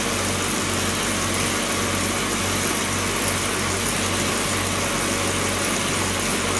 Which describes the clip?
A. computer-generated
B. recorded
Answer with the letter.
B